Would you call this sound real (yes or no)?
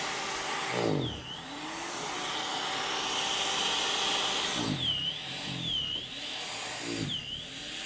yes